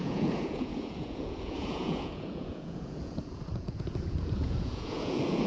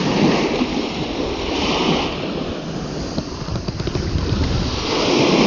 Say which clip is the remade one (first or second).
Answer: first